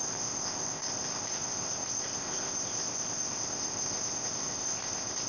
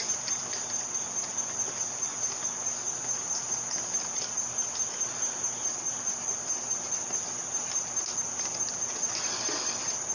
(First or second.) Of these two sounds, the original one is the second